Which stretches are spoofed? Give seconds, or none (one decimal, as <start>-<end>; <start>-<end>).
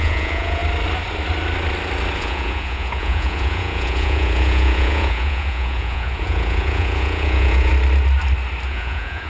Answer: 0.0-0.6; 2.2-7.7; 8.7-9.3